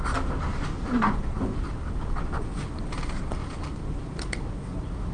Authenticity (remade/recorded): recorded